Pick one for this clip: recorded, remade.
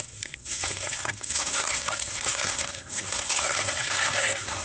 remade